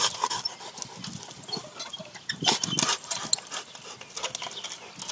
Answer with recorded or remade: recorded